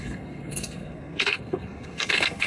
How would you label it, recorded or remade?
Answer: remade